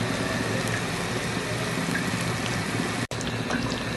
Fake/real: real